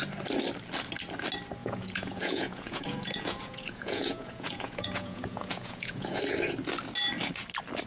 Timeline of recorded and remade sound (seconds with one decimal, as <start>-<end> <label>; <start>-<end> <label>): 0.0-1.6 recorded; 1.6-6.2 remade; 6.2-7.9 recorded